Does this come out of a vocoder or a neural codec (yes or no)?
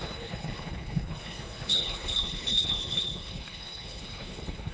yes